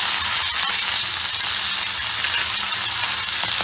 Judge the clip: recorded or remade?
recorded